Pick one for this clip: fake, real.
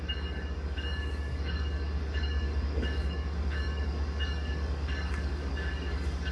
fake